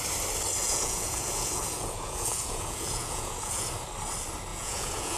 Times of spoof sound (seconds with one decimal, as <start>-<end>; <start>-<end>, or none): 0.6-3.7; 4.5-5.2